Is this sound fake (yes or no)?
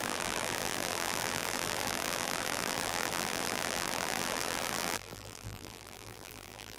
yes